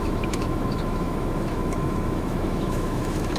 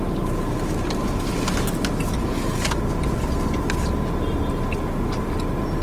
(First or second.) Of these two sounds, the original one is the second